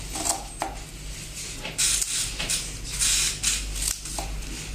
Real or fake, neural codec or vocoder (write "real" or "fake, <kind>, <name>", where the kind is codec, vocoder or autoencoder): real